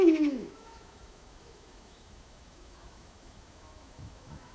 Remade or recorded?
remade